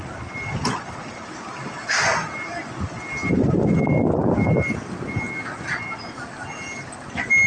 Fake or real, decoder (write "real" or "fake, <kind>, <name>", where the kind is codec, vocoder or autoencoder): real